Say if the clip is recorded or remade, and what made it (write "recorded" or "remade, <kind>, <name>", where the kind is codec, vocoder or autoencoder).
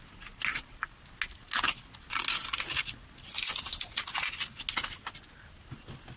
recorded